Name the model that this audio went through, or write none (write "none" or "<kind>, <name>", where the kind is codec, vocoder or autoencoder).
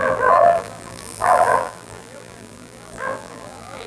vocoder, BigVGAN v2